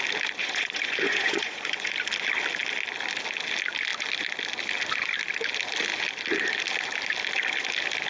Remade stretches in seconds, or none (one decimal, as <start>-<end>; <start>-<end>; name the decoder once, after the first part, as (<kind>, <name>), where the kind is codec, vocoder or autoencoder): 0.4-1.9 (vocoder, Vocos)